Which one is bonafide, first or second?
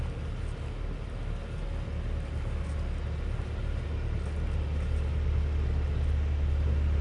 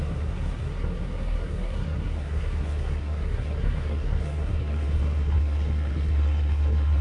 first